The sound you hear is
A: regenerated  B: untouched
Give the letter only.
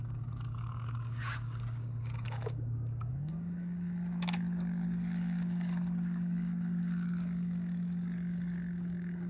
A